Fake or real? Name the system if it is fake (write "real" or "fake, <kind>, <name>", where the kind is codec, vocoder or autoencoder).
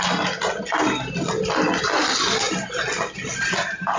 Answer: real